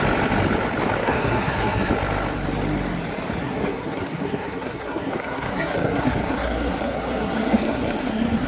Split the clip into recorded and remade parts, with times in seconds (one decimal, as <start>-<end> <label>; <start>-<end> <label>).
0.0-1.0 recorded; 1.0-1.9 remade; 1.9-3.4 recorded; 3.4-8.5 remade